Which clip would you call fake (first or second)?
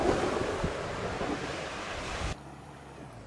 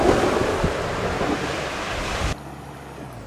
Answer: first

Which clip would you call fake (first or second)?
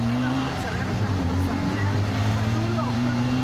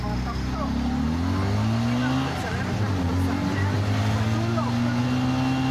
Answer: first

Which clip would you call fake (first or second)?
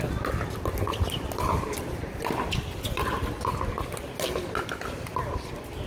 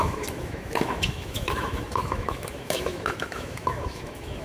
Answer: second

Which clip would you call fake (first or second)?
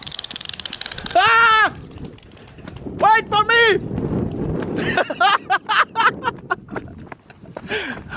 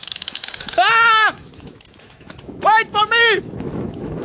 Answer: second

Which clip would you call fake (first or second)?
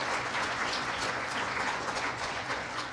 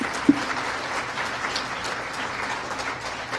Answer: first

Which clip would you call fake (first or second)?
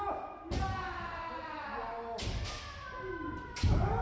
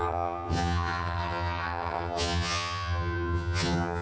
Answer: second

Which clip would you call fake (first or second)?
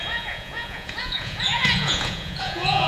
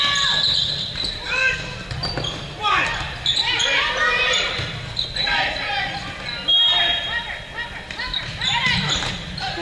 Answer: first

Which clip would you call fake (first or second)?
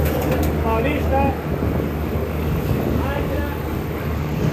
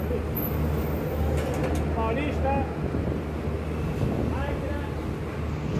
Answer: first